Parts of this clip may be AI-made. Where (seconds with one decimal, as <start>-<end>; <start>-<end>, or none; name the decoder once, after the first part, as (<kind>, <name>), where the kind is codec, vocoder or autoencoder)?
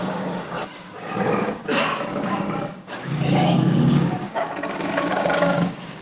0.0-1.6 (codec, DAC); 2.1-6.0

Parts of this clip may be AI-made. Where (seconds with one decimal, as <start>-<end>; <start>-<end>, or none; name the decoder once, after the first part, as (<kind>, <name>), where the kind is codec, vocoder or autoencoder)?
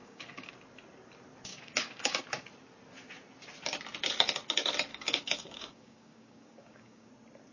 0.0-0.5 (codec, DAC); 1.5-2.2; 4.9-7.1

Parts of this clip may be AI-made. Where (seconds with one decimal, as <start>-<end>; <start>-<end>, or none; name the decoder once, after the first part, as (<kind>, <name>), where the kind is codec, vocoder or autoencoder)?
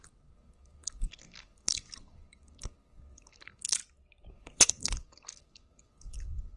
0.0-3.8 (codec, DAC); 4.3-6.6